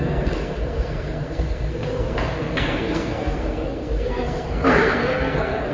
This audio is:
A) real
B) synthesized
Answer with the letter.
B